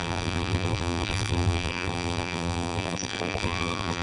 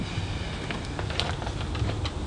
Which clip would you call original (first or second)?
second